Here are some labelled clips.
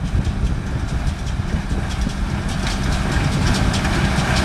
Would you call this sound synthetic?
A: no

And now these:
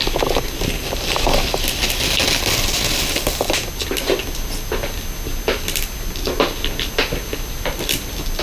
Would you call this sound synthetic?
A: no